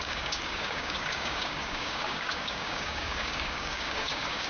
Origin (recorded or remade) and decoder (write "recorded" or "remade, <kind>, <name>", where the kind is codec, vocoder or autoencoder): remade, codec, DAC